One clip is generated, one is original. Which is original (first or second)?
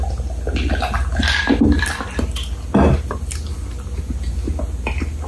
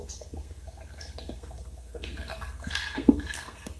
first